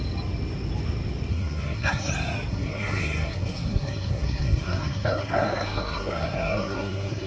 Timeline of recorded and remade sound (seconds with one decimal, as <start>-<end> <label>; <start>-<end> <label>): 0.0-1.3 recorded; 1.3-2.1 remade; 2.1-2.5 recorded; 2.5-7.3 remade

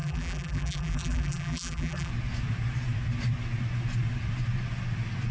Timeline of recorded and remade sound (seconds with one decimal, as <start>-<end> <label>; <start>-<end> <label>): 0.0-2.1 remade; 2.1-5.3 recorded